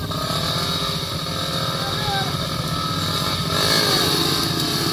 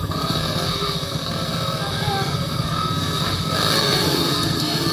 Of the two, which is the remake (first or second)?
second